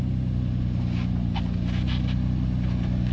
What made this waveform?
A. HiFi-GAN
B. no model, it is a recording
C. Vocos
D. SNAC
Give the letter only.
B